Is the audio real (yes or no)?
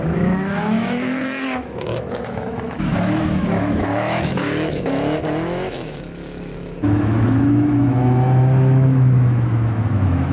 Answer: no